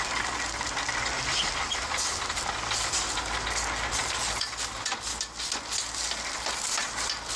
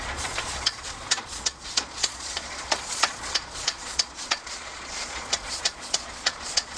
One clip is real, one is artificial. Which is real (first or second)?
first